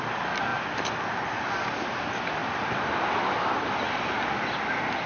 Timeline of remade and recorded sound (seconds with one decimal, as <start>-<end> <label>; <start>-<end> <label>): 0.0-2.4 recorded; 2.4-3.4 remade; 3.4-5.1 recorded